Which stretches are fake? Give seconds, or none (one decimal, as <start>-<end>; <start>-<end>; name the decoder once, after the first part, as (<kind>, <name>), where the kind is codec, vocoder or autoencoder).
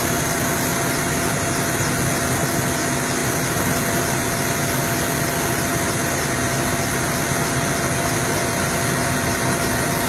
none